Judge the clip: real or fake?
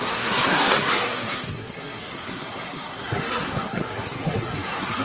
fake